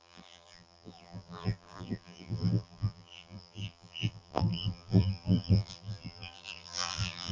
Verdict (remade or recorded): remade